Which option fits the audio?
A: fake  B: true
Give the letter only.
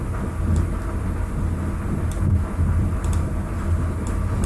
B